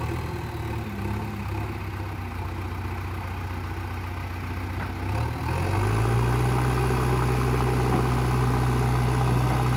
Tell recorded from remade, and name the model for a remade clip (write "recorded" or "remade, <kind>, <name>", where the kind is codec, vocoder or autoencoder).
recorded